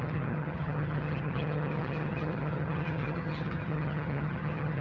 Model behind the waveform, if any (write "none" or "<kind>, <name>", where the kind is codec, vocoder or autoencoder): vocoder, HiFi-GAN